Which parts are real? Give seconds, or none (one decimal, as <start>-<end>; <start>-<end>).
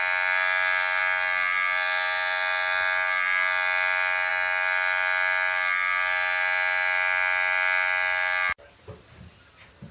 0.0-9.9